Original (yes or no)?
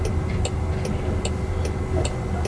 yes